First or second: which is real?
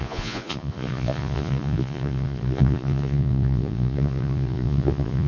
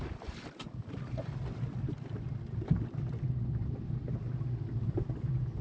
second